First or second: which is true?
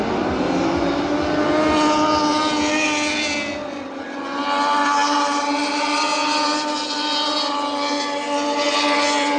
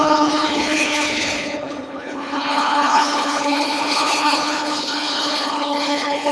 first